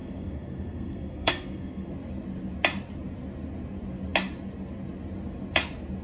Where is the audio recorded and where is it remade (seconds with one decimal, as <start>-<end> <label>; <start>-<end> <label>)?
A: 0.0-1.9 remade; 1.9-6.0 recorded